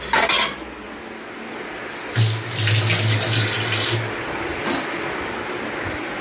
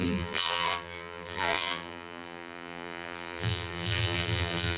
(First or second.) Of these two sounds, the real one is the first